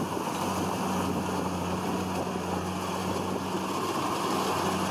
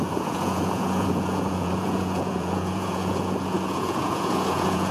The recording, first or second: first